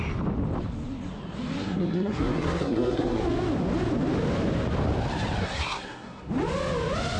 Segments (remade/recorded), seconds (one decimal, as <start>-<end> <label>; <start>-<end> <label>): 0.0-1.6 recorded; 1.6-3.2 remade; 3.2-5.4 recorded; 5.4-6.3 remade; 6.3-7.2 recorded